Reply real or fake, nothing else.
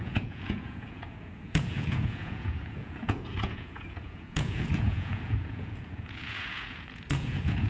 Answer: fake